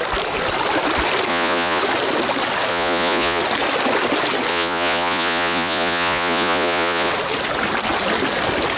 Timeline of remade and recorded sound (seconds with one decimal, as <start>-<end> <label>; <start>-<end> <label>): 0.0-1.3 recorded; 1.3-1.8 remade; 1.8-2.7 recorded; 2.7-3.4 remade; 3.4-4.5 recorded; 4.5-7.1 remade; 7.1-8.8 recorded